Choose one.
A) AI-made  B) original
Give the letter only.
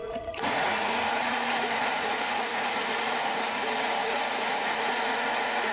A